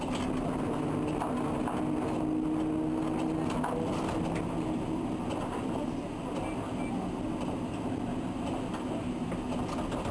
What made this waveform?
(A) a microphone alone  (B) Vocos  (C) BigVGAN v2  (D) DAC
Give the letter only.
A